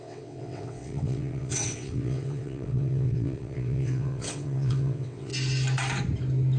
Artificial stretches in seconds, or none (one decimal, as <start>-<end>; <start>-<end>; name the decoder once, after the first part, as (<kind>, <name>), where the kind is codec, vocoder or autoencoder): 0.0-5.3 (vocoder, WaveNeXt)